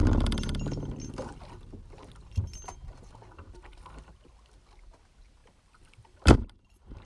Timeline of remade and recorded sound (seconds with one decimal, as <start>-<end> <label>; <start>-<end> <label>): 0.0-5.4 recorded; 5.4-7.1 remade